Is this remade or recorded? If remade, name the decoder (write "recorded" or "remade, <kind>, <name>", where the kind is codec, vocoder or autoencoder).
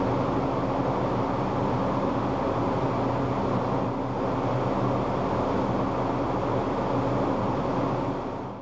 recorded